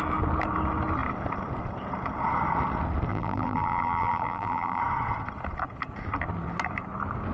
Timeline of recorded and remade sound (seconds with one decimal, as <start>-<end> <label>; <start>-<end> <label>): 0.0-3.1 recorded; 3.1-4.8 remade; 4.8-7.3 recorded